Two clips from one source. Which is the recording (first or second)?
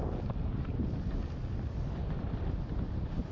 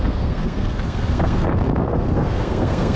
first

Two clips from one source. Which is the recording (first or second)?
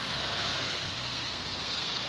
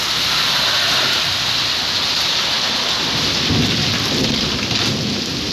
second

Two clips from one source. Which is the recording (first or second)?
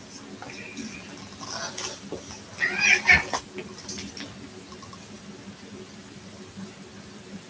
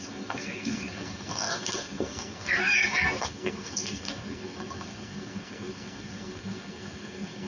first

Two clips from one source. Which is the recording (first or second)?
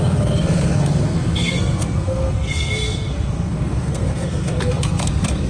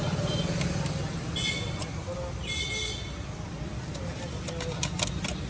second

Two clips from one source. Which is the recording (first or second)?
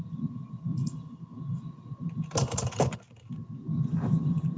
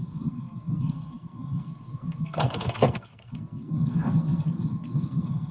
first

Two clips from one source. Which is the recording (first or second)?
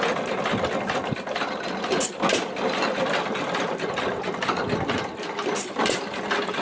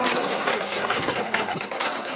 first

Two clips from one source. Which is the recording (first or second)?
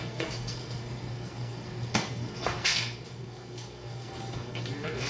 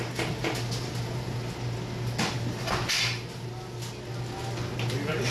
second